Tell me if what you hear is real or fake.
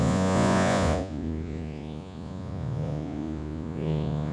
fake